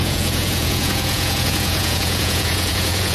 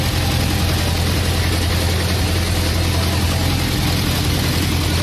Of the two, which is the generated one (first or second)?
first